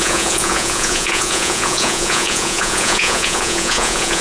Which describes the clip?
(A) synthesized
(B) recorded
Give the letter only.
A